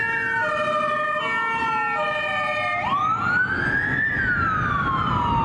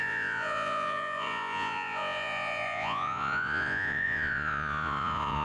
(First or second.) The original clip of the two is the first